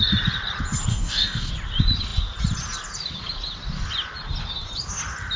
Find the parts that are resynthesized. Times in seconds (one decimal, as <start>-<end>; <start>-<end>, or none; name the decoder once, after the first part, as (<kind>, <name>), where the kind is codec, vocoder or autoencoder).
0.9-1.5 (codec, DAC)